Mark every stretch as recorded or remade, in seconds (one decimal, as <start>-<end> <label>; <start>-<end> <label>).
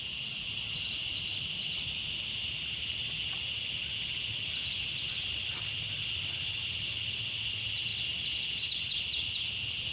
0.0-9.9 recorded